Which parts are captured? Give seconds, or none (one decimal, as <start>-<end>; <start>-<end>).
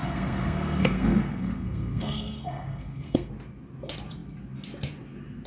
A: 3.3-5.5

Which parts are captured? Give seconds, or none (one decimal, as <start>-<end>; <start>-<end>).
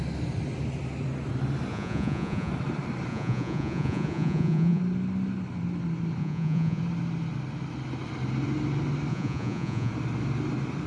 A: 0.0-1.7; 2.5-3.1; 4.8-6.2; 6.8-9.1; 9.9-10.9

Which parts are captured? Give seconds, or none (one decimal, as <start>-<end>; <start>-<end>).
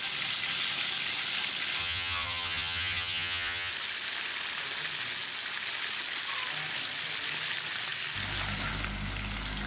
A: 0.0-1.8; 3.7-9.7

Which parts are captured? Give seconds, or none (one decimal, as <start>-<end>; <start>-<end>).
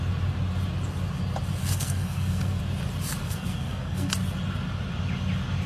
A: 0.0-1.6; 2.6-3.2; 4.1-5.7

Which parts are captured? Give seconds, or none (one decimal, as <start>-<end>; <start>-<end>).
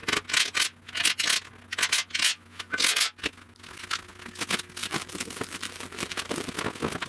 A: 0.0-4.8; 6.5-7.1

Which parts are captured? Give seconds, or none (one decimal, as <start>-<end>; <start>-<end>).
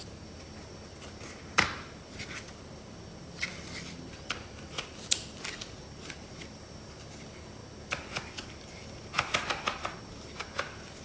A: 0.0-11.0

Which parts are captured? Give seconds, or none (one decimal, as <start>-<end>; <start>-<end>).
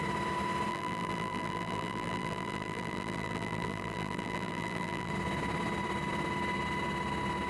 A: 0.0-0.7; 5.1-7.5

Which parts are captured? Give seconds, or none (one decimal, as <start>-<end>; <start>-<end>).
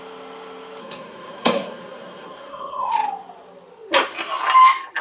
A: 0.0-0.8; 2.9-5.0